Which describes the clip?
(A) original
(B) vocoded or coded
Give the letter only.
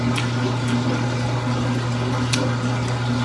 A